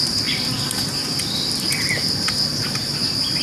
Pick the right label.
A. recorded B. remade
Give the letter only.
A